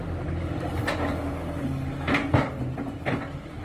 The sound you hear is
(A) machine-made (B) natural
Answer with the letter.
B